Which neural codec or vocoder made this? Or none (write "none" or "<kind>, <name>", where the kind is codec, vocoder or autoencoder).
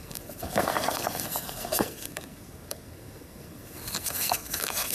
codec, SNAC